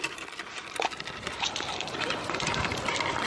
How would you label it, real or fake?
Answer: fake